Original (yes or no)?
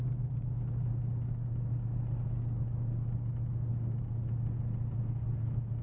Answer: yes